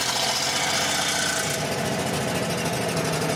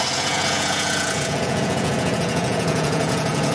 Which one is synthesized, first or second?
second